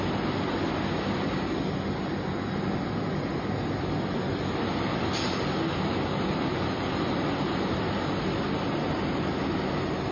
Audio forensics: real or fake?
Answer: real